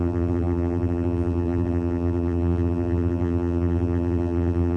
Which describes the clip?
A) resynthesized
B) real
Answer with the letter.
A